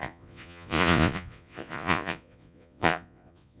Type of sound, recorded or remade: remade